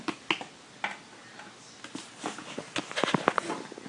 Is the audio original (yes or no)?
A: yes